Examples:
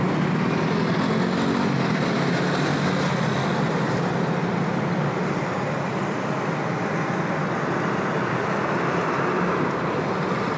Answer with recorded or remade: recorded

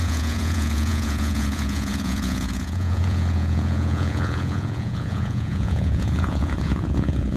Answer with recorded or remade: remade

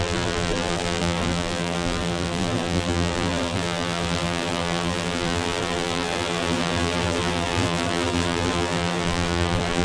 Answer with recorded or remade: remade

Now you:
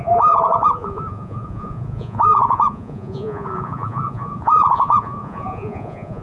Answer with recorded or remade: remade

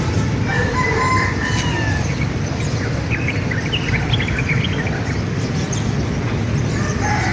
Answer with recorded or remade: recorded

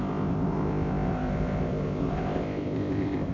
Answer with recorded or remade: remade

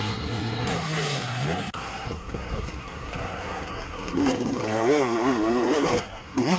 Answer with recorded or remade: remade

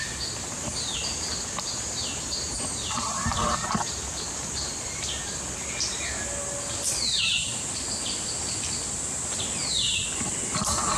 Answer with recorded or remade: recorded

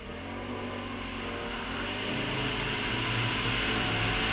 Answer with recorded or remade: recorded